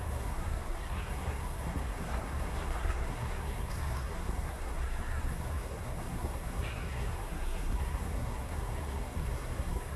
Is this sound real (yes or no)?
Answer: no